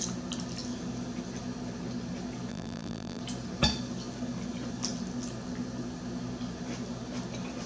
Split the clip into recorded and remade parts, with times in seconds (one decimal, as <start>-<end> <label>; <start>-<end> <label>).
0.0-2.5 recorded; 2.5-3.2 remade; 3.2-7.7 recorded